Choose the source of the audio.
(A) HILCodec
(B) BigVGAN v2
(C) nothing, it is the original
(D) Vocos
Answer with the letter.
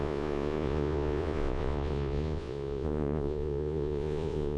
D